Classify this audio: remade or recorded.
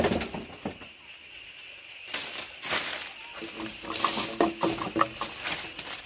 recorded